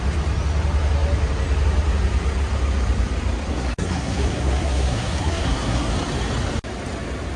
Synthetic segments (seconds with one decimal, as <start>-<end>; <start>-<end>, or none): 3.5-5.9